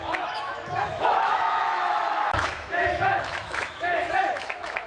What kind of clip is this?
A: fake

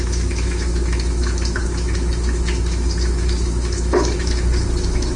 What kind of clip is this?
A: fake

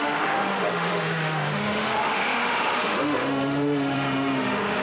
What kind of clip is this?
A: fake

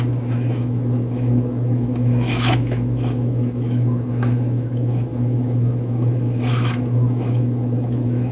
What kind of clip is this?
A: fake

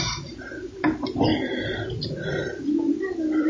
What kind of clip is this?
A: real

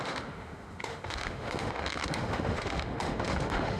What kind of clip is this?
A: fake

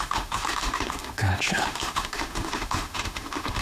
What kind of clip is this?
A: fake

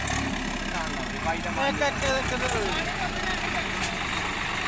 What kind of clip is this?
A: real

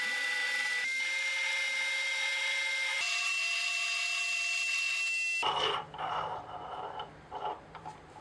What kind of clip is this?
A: real